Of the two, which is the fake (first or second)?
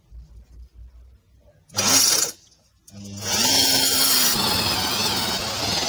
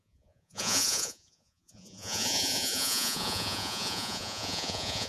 second